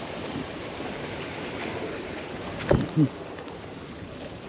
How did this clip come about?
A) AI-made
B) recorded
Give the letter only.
A